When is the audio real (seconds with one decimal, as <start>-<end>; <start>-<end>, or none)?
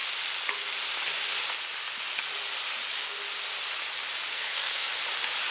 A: 0.0-4.3; 4.9-5.5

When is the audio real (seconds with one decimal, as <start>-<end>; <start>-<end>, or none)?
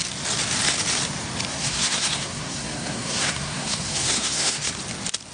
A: 0.0-1.5; 4.7-5.3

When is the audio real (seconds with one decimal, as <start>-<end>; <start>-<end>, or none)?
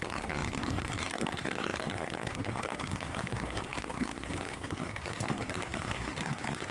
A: none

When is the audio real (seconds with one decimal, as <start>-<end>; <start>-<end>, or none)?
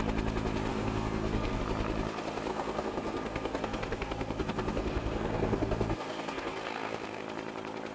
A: 0.0-0.7; 1.6-2.5; 7.2-7.9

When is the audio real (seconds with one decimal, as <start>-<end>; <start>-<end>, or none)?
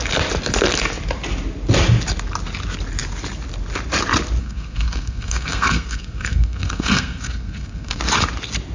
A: 0.0-4.4; 8.0-8.7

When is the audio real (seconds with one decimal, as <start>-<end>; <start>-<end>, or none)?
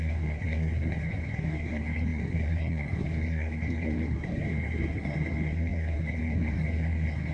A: none